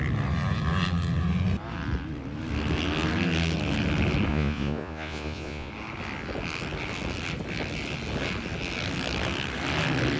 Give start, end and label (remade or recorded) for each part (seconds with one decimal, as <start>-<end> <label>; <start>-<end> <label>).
0.0-4.3 recorded; 4.3-5.7 remade; 5.7-10.2 recorded